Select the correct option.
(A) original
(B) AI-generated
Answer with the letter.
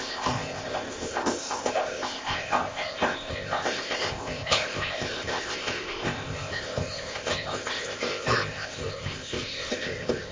B